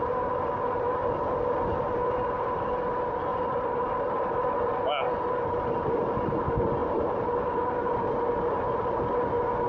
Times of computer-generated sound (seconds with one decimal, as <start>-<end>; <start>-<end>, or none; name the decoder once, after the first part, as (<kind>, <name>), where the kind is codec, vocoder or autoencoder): 3.3-4.3 (vocoder, BigVGAN v2); 6.8-7.4